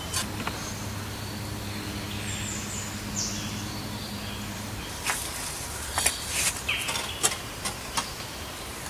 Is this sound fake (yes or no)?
no